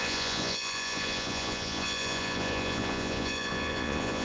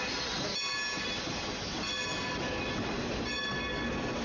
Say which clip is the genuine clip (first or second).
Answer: second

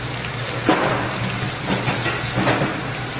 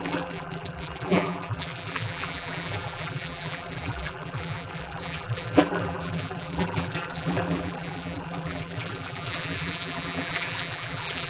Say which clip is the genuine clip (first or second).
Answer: first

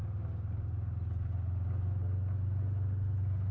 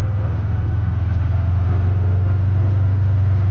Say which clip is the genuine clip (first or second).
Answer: first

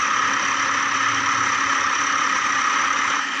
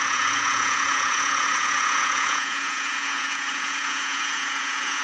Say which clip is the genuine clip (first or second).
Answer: first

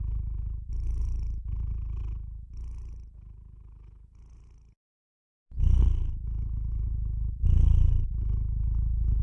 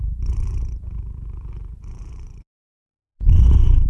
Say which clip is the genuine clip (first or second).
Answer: first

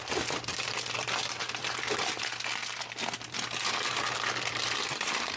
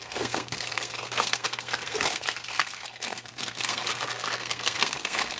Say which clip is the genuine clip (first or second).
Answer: first